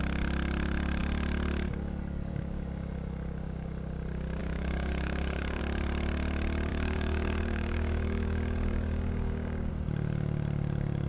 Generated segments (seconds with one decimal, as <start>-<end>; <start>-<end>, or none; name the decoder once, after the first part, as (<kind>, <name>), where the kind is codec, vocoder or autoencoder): 4.4-5.6 (codec, DAC); 6.7-9.7